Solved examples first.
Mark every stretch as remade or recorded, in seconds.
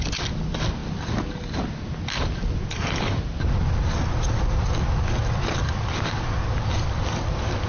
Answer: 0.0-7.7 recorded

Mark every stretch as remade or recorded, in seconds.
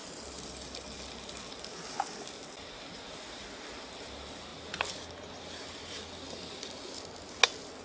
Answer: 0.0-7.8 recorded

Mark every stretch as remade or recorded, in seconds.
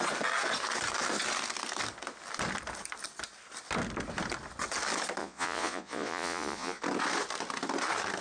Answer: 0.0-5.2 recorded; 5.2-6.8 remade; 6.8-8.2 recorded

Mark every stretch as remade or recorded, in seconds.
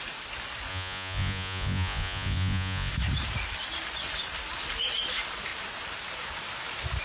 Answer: 0.0-0.7 recorded; 0.7-2.9 remade; 2.9-7.0 recorded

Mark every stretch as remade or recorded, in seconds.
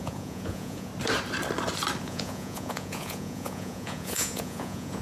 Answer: 0.0-0.9 remade; 0.9-2.0 recorded; 2.0-5.0 remade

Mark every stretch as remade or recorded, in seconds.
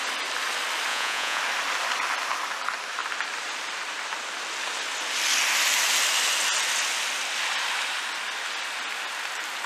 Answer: 0.0-0.9 recorded; 0.9-1.4 remade; 1.4-9.7 recorded